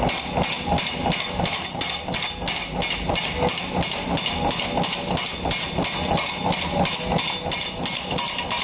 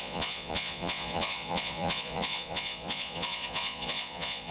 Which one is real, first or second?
first